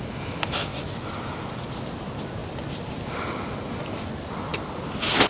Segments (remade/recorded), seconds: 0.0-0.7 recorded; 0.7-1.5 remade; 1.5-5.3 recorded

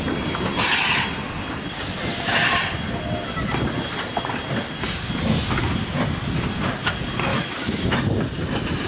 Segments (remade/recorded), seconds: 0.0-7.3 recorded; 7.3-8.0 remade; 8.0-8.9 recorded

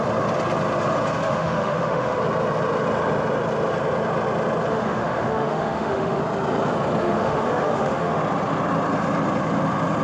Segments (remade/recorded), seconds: 0.0-1.2 recorded; 1.2-2.2 remade; 2.2-4.7 recorded; 4.7-6.2 remade; 6.2-7.0 recorded; 7.0-8.2 remade; 8.2-10.0 recorded

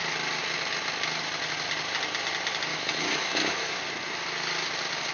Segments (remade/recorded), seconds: 0.0-2.7 recorded; 2.7-3.8 remade; 3.8-5.1 recorded